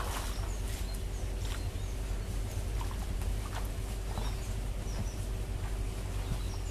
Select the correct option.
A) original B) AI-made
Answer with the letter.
A